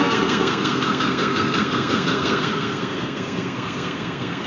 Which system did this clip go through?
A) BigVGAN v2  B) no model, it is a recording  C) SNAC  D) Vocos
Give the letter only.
C